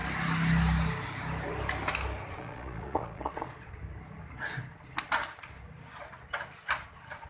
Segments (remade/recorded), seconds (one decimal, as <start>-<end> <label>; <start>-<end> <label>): 0.0-2.3 recorded; 2.3-3.8 remade; 3.8-7.3 recorded